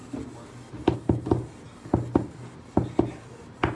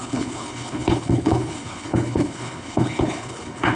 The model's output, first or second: second